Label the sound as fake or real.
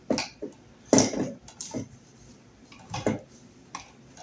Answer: real